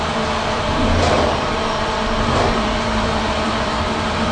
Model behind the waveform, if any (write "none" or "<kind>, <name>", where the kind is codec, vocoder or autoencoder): vocoder, BigVGAN v2